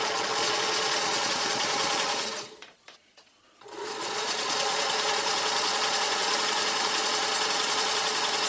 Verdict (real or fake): fake